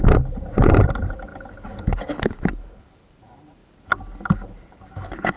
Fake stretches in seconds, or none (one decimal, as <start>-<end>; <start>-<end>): 0.0-1.3; 2.2-3.6